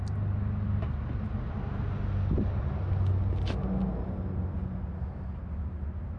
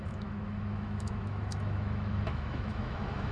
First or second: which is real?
first